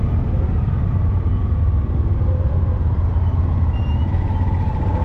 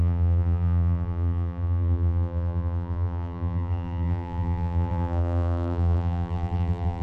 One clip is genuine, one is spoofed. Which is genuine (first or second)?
first